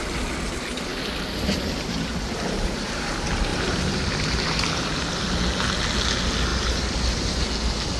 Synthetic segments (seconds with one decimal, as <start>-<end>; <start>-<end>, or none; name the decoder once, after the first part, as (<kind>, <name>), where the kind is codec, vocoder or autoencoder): 3.5-5.1 (vocoder, BigVGAN v2); 6.5-7.4